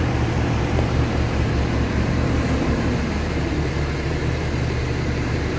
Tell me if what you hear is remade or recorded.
remade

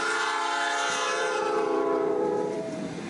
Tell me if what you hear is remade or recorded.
remade